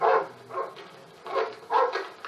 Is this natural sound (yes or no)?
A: yes